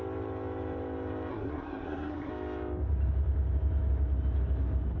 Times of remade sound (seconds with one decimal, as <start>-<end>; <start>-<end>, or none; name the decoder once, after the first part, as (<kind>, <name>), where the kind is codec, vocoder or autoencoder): 1.3-2.3 (codec, SNAC)